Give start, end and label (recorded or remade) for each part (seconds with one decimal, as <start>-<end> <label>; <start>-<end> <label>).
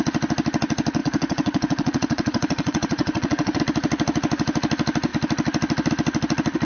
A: 0.0-1.0 recorded; 1.0-3.6 remade; 3.6-6.6 recorded